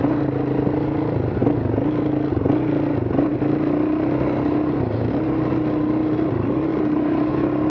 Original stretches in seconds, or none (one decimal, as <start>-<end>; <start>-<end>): 0.0-6.7; 7.3-7.7